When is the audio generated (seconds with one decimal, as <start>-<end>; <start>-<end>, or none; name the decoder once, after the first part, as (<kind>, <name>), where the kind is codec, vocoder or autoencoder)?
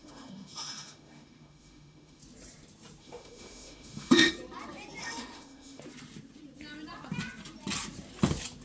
0.0-2.2 (autoencoder, DAC-VAE); 3.0-4.3; 5.0-5.8